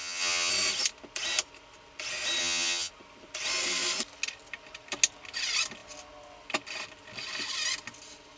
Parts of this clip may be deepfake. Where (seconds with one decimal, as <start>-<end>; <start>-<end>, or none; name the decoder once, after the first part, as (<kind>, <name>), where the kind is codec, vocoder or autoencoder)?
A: 0.0-0.5 (vocoder, HiFi-GAN); 2.4-2.9